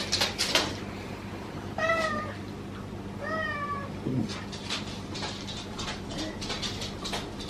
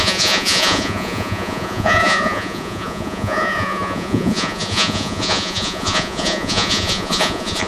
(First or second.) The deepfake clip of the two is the second